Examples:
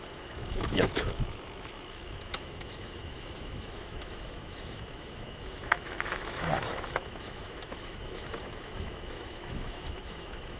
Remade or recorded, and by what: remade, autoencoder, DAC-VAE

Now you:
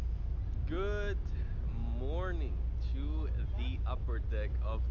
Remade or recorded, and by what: recorded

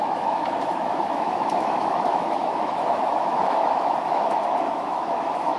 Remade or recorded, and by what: remade, autoencoder, DAC-VAE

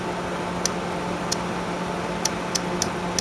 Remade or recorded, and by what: recorded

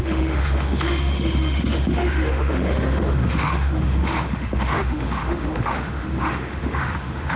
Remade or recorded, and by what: remade, autoencoder, DAC-VAE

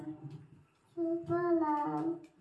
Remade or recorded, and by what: recorded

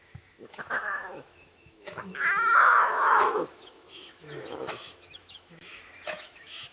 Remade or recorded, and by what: remade, autoencoder, DAC-VAE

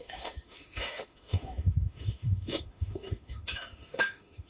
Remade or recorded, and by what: remade, autoencoder, DAC-VAE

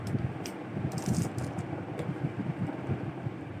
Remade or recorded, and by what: recorded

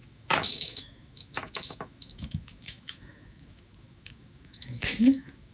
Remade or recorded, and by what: remade, autoencoder, DAC-VAE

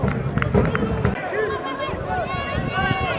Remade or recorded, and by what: recorded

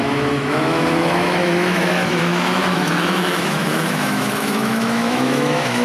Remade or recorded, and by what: remade, autoencoder, DAC-VAE